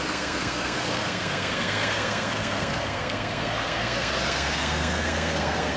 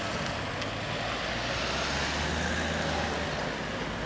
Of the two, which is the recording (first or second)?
second